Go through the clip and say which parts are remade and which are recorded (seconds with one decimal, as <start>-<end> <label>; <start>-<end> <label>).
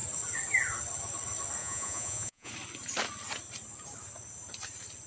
0.0-1.6 recorded; 1.6-2.5 remade; 2.5-5.1 recorded